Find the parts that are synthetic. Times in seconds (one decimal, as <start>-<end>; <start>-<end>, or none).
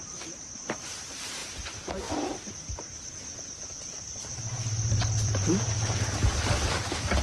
0.0-7.2